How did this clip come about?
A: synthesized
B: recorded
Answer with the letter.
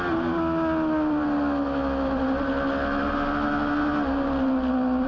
B